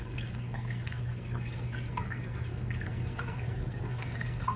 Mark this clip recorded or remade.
remade